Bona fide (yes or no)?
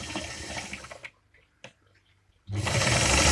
yes